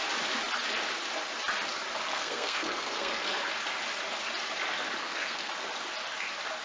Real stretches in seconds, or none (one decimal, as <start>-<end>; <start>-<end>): 0.0-2.1; 3.2-5.0; 5.5-6.6